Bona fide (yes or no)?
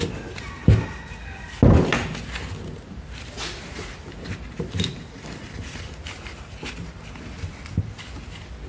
yes